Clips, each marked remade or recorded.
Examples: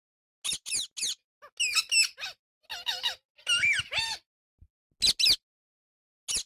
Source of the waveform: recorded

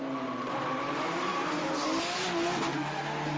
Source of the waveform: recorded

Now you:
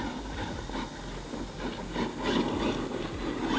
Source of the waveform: recorded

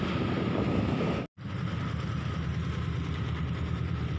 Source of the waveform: recorded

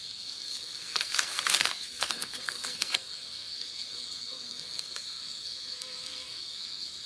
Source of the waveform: remade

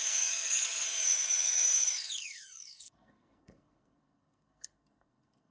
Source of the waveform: remade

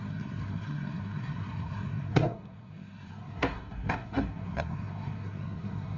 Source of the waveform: remade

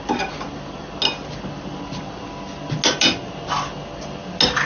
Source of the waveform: recorded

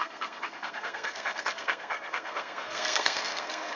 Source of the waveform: remade